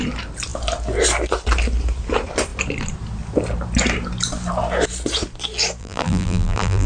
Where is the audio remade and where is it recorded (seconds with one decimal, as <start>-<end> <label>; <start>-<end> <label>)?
0.0-5.8 recorded; 5.8-6.9 remade